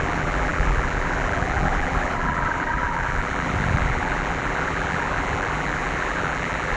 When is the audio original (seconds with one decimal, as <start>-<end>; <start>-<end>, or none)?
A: none